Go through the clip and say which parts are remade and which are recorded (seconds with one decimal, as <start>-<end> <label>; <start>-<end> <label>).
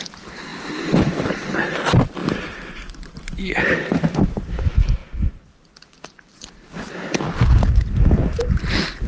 0.0-0.5 remade; 0.5-1.0 recorded; 1.0-5.0 remade; 5.0-8.4 recorded; 8.4-9.1 remade